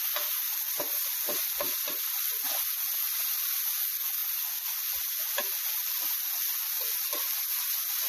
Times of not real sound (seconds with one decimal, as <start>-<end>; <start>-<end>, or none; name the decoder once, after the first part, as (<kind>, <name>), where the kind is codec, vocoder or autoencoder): none